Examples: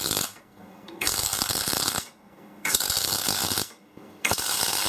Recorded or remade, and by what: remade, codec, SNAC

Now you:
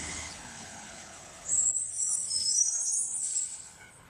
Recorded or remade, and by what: remade, codec, HILCodec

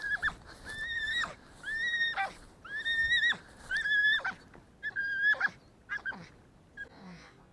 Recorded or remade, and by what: recorded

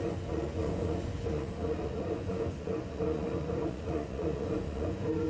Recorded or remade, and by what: remade, vocoder, Vocos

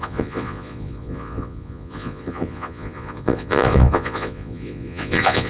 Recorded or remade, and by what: remade, vocoder, Vocos